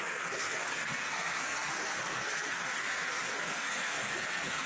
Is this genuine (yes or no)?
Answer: no